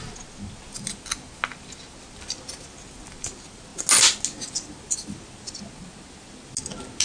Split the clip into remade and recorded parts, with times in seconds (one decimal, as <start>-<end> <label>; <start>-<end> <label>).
0.0-7.0 recorded